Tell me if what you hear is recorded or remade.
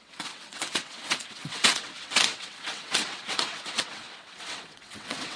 remade